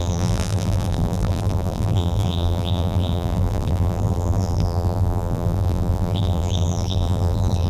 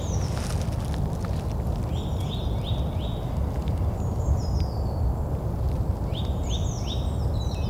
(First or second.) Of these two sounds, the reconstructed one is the first